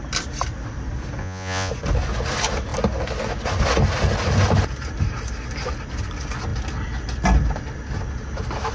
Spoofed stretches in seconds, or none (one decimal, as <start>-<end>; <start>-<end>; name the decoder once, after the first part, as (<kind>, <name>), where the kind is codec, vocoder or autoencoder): 1.2-1.7 (vocoder, Vocos)